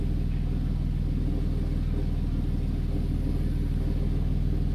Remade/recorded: recorded